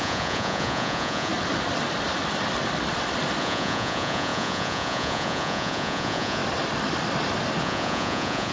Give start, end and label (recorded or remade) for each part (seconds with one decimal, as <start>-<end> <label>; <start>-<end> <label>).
0.0-1.3 remade; 1.3-3.4 recorded; 3.4-6.4 remade; 6.4-7.6 recorded; 7.6-8.5 remade

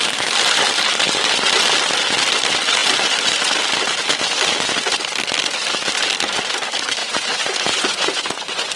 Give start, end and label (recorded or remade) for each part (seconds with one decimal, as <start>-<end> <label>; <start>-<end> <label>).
0.0-7.0 recorded; 7.0-8.8 remade